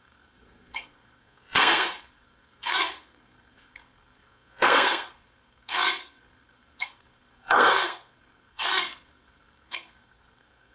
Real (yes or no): no